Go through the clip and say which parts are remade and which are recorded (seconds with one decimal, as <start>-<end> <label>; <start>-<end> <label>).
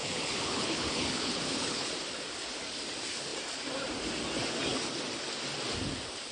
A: 0.0-1.9 remade; 1.9-6.3 recorded